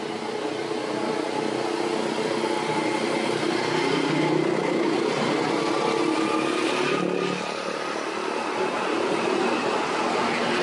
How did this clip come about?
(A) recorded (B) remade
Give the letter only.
A